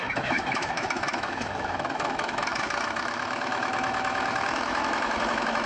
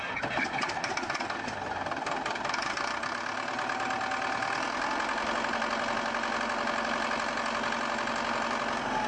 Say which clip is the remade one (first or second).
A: first